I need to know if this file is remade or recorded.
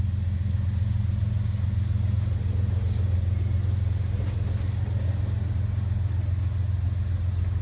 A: recorded